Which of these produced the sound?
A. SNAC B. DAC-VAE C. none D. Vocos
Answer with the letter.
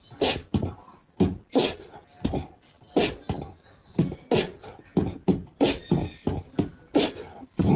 C